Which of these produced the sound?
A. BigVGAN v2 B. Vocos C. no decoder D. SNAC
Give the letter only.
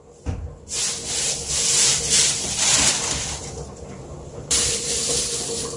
A